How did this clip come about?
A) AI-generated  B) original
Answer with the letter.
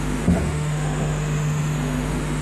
A